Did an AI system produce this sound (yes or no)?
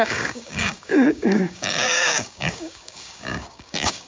yes